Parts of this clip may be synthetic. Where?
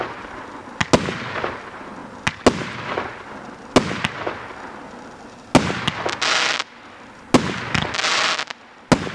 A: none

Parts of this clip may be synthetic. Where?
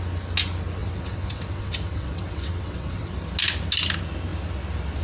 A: 0.8-3.1 (vocoder, WaveNeXt)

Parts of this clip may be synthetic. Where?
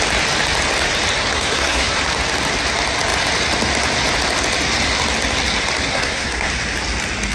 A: 1.3-1.9 (codec, SNAC); 5.9-6.5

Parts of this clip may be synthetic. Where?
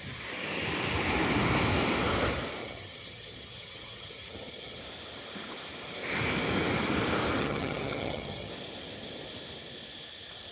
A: 2.6-4.8 (vocoder, HiFi-GAN); 7.4-8.5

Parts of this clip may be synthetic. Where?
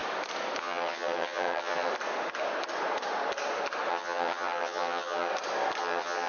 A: 0.6-1.9 (vocoder, HiFi-GAN); 3.9-5.3; 5.8-6.3